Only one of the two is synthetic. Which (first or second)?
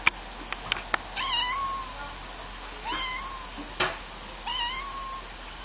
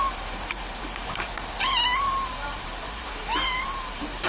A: second